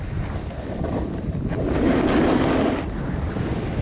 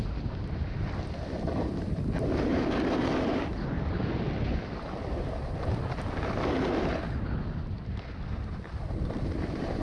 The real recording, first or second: second